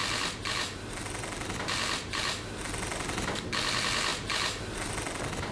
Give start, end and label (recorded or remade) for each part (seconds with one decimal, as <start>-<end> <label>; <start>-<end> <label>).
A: 0.0-3.3 remade; 3.3-4.1 recorded; 4.1-4.9 remade; 4.9-5.5 recorded